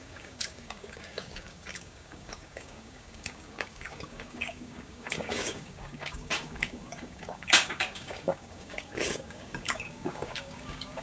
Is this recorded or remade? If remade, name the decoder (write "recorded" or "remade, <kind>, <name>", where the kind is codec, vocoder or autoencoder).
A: remade, codec, DAC